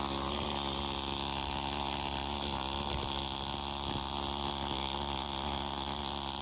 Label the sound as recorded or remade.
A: recorded